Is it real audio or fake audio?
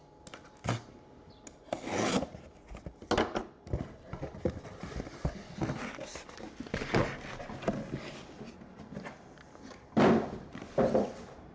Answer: real